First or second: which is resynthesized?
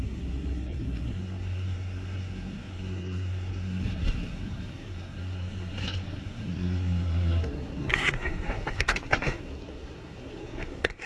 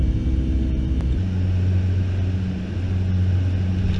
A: first